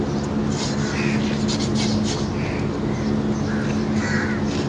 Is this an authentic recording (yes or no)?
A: yes